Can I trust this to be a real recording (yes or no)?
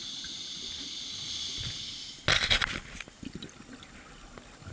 yes